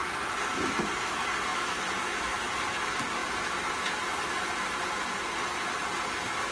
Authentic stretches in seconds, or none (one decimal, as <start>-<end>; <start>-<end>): 0.0-1.5; 2.2-6.5